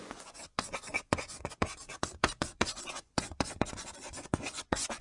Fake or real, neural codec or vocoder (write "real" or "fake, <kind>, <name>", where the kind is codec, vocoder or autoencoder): fake, vocoder, Vocos